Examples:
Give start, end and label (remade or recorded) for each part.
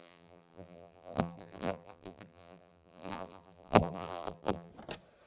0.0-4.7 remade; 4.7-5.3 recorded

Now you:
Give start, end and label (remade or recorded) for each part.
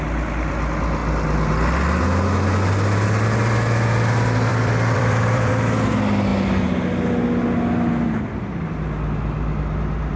0.0-4.5 recorded; 4.5-5.5 remade; 5.5-10.2 recorded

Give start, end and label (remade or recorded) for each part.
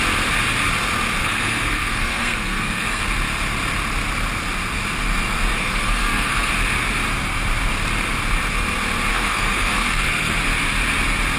0.0-1.2 recorded; 1.2-3.0 remade; 3.0-5.6 recorded; 5.6-6.5 remade; 6.5-9.1 recorded; 9.1-10.4 remade; 10.4-11.4 recorded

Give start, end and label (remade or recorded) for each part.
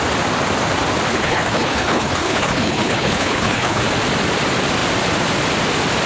0.0-1.1 recorded; 1.1-3.8 remade; 3.8-6.1 recorded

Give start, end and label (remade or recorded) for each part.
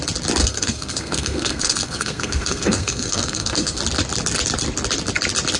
0.0-0.4 recorded; 0.4-3.8 remade; 3.8-5.6 recorded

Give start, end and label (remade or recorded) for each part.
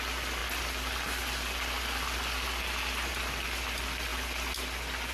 0.0-5.1 recorded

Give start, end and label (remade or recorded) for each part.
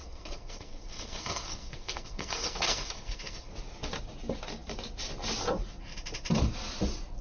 0.0-3.5 remade; 3.5-7.2 recorded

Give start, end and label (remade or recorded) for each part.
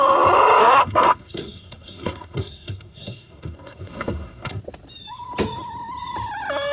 0.0-0.6 recorded; 0.6-4.6 remade; 4.6-6.7 recorded